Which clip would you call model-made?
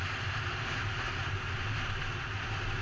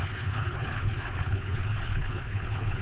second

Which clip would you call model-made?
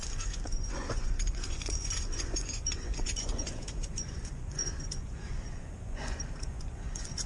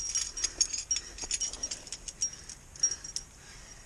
first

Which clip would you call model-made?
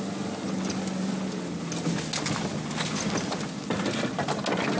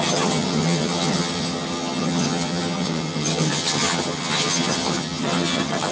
second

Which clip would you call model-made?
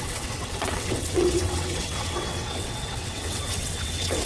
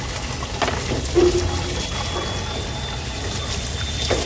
first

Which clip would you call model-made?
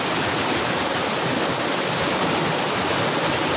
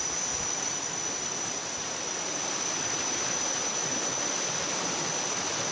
first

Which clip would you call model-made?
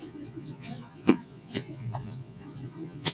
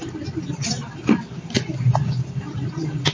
first